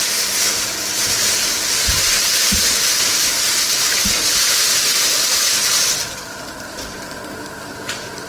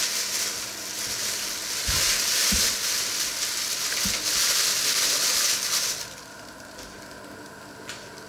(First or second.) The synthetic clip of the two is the first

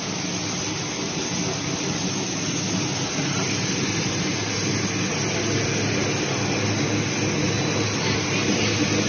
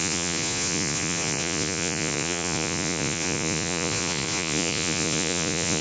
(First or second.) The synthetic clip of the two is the second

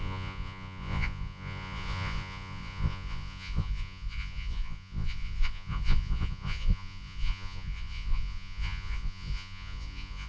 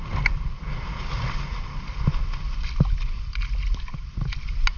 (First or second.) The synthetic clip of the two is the first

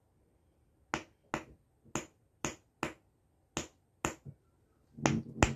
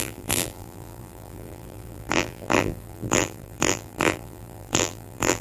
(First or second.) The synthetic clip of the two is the second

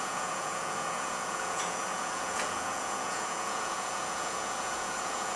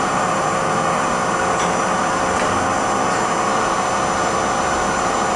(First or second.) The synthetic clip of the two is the first